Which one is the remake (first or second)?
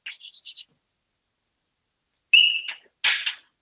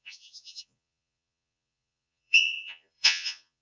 second